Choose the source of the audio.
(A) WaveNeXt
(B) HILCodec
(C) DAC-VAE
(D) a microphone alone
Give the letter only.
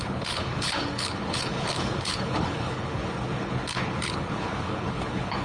B